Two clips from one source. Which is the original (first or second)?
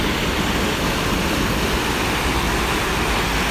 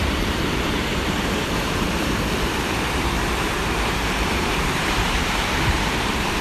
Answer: first